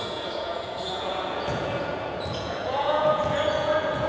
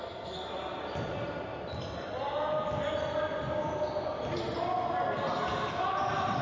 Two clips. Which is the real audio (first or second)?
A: second